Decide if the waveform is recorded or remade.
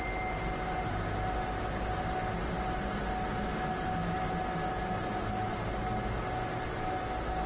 recorded